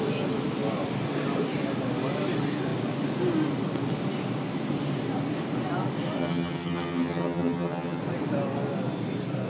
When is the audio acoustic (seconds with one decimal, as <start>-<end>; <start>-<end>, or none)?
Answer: 0.0-6.2; 8.0-9.5